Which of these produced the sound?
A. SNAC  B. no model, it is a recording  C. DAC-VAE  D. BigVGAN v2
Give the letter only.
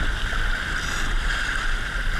B